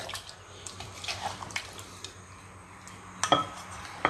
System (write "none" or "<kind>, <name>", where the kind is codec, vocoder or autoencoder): none